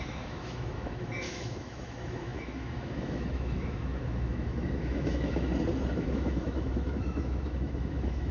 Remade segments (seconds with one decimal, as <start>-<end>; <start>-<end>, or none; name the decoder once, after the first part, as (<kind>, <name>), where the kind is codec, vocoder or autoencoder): 0.0-5.5 (autoencoder, DAC-VAE); 6.0-8.3